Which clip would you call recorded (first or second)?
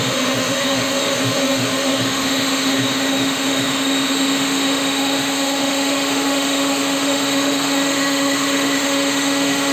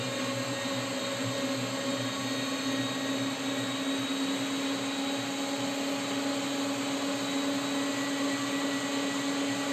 second